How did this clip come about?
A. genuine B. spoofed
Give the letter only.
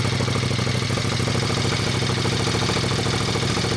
A